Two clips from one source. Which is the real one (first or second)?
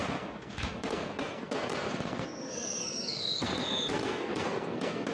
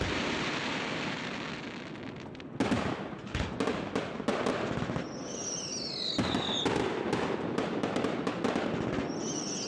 second